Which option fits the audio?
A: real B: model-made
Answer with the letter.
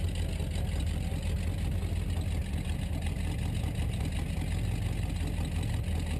A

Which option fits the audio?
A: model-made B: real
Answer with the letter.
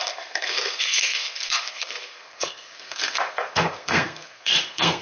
A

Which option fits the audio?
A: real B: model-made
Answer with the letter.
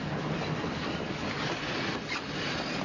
A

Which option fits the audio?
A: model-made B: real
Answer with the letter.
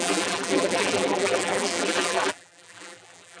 A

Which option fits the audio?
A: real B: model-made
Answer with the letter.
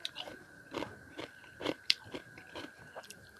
B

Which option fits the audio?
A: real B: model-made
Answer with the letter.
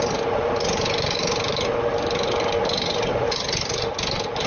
A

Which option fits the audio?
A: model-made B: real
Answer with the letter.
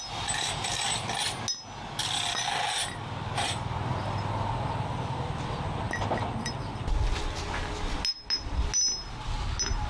B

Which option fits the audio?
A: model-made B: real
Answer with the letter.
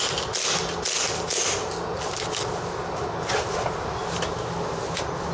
B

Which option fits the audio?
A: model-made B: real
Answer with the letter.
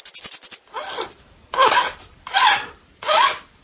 A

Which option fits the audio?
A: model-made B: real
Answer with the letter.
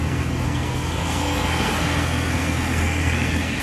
A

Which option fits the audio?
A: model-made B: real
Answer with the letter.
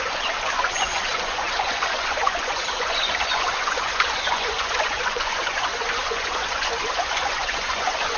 A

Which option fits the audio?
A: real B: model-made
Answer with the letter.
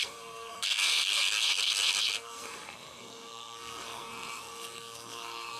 B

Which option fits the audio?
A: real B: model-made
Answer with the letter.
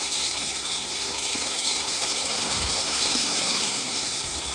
B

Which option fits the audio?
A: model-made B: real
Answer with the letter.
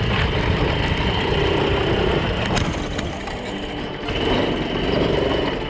B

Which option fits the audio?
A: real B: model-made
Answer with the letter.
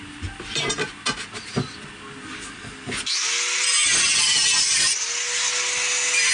A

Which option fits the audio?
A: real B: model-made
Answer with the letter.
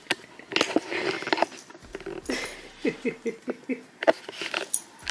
A